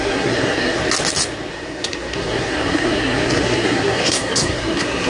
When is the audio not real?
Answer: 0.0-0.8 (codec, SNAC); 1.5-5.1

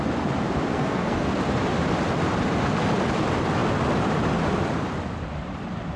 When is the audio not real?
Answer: 0.7-1.3 (codec, SNAC)

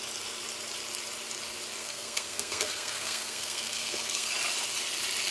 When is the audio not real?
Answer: 1.8-4.3 (codec, SNAC)

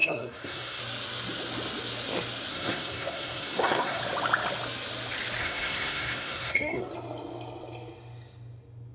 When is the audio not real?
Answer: 0.0-0.8 (codec, SNAC); 2.5-4.0; 5.4-6.8